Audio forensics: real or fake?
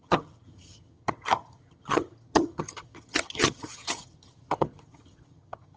fake